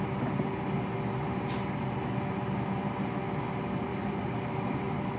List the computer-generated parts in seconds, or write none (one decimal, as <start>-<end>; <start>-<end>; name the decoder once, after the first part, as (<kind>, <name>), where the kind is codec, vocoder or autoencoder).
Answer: 3.9-4.8 (vocoder, BigVGAN v2)